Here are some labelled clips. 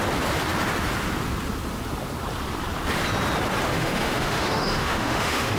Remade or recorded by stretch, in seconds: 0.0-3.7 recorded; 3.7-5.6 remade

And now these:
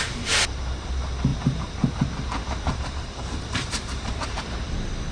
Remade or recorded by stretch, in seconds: 0.0-1.3 recorded; 1.3-4.4 remade; 4.4-5.1 recorded

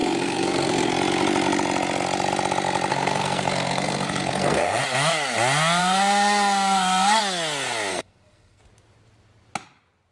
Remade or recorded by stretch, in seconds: 0.0-0.9 remade; 0.9-2.9 recorded; 2.9-4.8 remade; 4.8-5.8 recorded; 5.8-7.2 remade; 7.2-7.9 recorded; 7.9-8.6 remade; 8.6-10.1 recorded